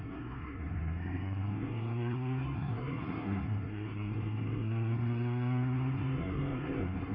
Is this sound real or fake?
fake